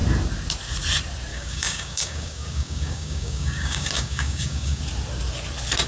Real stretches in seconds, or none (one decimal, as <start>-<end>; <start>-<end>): 0.0-1.3; 4.8-5.9